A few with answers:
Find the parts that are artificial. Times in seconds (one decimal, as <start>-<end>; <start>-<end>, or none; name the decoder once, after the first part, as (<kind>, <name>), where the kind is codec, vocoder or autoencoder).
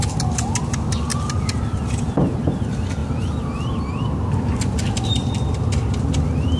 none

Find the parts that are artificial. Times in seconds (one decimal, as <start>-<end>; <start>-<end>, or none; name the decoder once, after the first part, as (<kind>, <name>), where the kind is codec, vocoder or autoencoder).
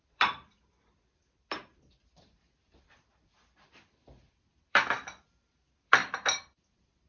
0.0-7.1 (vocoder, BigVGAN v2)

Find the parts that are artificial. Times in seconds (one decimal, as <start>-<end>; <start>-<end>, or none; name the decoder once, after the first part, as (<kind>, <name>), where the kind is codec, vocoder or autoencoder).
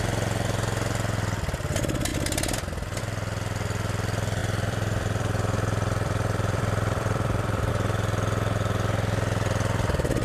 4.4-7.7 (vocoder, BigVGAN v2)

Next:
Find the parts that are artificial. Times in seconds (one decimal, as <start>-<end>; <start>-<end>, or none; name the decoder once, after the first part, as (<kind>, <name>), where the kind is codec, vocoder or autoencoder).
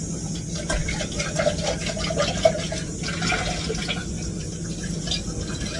none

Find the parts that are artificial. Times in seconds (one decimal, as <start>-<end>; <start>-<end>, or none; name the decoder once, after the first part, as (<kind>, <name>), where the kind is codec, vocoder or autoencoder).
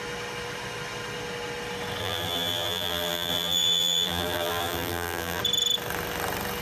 2.0-5.4 (vocoder, BigVGAN v2)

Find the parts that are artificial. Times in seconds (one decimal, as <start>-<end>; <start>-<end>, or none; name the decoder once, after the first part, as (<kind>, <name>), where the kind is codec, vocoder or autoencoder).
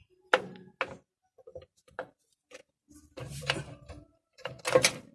1.5-4.6 (vocoder, BigVGAN v2)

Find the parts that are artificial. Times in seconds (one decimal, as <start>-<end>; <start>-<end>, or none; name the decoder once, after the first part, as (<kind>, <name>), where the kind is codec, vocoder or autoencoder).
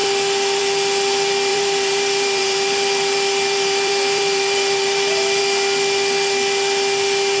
1.5-5.4 (vocoder, BigVGAN v2)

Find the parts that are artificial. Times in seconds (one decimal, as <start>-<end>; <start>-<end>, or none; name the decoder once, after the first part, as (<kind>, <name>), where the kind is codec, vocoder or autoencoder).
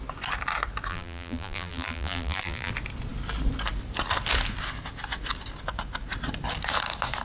0.9-2.7 (vocoder, BigVGAN v2)